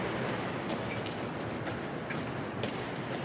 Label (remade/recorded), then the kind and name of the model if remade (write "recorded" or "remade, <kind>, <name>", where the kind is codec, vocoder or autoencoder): recorded